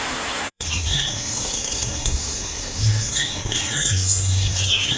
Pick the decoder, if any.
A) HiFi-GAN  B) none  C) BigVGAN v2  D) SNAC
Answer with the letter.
D